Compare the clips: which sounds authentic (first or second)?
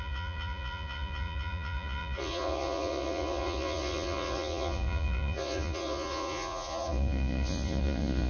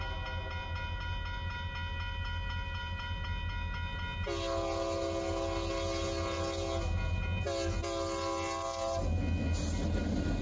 second